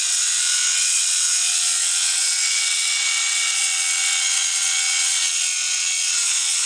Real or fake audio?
fake